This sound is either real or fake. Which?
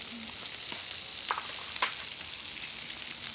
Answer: real